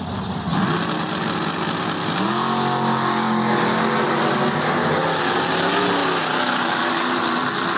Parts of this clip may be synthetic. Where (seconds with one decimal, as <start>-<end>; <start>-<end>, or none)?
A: none